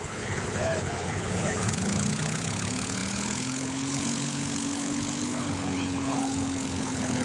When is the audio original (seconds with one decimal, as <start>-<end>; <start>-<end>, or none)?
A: none